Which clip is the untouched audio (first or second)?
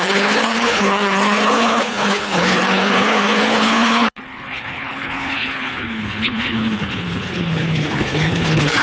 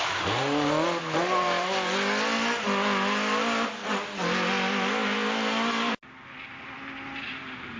second